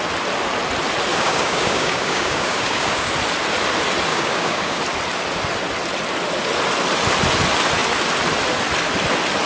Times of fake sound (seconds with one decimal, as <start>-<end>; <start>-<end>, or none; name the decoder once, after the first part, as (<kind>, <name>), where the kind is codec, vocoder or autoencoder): 1.1-3.1 (codec, DAC); 4.1-4.8